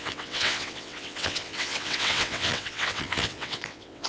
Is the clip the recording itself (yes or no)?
no